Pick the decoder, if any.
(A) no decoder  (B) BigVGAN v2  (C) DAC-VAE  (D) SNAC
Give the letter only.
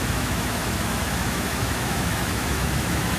C